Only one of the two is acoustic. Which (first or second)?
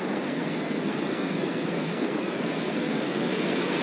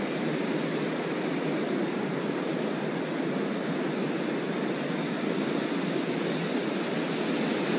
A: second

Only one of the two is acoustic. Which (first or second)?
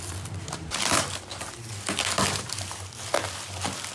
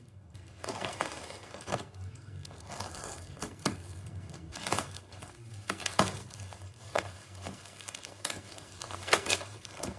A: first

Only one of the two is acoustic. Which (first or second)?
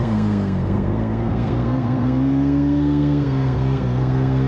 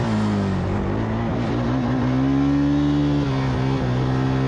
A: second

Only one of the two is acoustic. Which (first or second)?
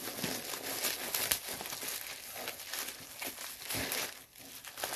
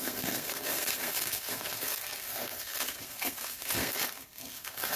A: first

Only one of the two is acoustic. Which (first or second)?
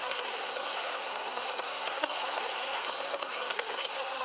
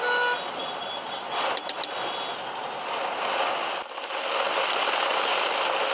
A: second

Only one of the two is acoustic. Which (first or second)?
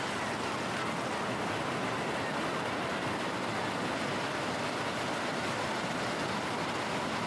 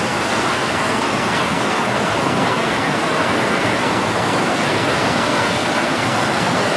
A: first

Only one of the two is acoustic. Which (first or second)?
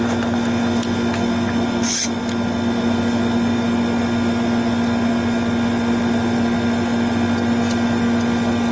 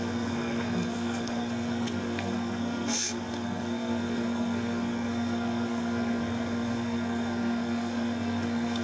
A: first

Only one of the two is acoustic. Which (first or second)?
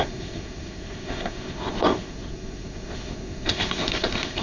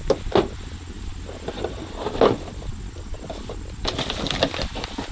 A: second